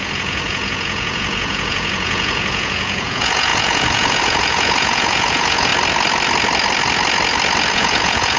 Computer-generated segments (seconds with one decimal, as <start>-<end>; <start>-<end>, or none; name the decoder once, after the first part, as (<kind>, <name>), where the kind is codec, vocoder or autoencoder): 0.0-5.7 (vocoder, Vocos); 7.7-8.4